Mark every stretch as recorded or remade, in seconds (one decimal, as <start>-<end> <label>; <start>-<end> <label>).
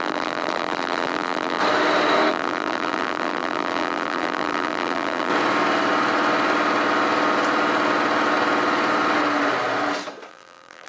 0.0-1.6 remade; 1.6-2.3 recorded; 2.3-5.3 remade; 5.3-10.3 recorded; 10.3-10.9 remade